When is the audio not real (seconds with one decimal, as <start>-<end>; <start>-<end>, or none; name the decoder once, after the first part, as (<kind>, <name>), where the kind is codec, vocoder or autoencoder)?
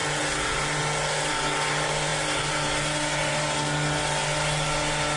none